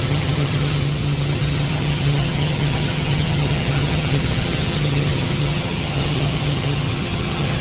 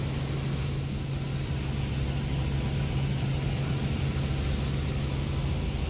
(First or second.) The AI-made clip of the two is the first